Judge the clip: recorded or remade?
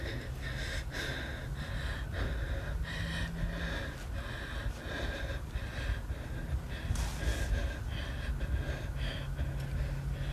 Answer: recorded